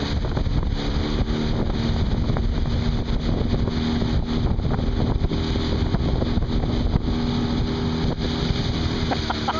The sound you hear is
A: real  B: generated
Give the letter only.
A